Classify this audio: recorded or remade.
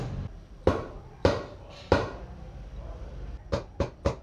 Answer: recorded